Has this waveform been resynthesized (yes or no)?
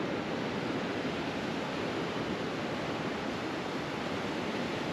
no